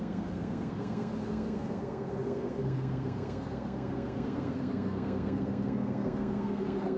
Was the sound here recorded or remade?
remade